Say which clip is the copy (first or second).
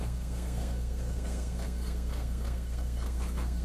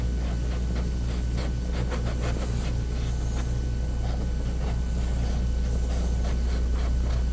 first